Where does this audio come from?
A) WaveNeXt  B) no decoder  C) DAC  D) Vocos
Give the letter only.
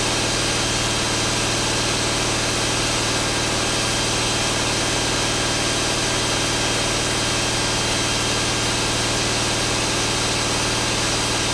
B